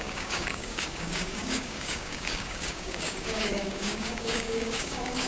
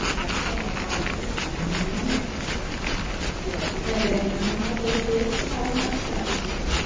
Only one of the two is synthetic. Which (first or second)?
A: first